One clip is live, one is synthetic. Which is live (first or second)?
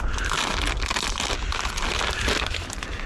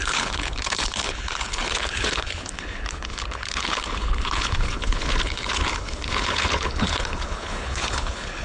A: first